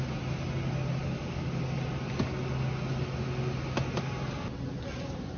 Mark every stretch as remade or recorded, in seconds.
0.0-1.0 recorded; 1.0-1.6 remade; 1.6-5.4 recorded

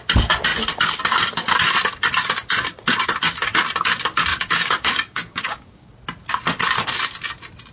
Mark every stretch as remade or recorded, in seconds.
0.0-4.3 recorded; 4.3-5.9 remade; 5.9-7.7 recorded